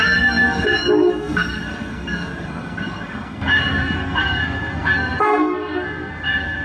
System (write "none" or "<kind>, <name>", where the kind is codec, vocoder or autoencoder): codec, SNAC